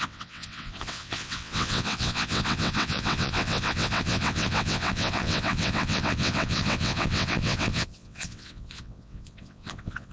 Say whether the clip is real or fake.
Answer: fake